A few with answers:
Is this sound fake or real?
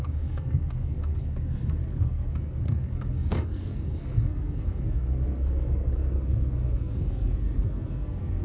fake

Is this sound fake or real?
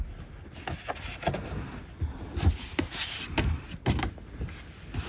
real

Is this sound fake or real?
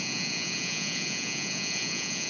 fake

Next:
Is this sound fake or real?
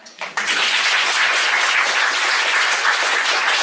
fake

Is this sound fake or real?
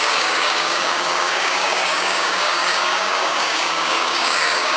fake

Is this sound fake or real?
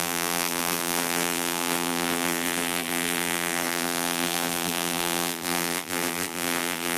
fake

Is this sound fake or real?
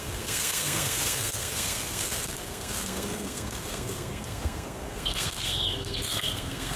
fake